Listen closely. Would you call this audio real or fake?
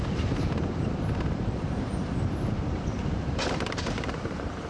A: fake